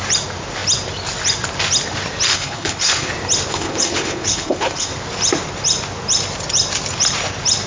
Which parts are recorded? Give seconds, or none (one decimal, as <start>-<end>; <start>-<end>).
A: 0.0-2.3; 3.1-3.5; 4.9-7.7